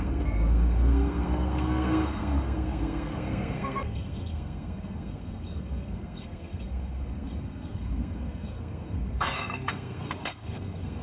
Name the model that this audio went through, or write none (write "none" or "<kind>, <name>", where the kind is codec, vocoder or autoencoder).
codec, SNAC